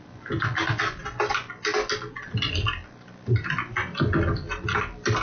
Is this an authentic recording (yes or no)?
yes